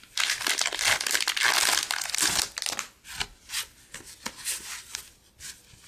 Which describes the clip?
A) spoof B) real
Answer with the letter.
B